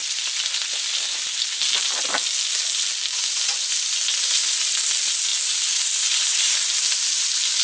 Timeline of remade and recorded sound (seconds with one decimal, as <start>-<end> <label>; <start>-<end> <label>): 0.0-7.6 recorded